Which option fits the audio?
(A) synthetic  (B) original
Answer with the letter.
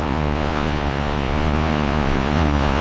A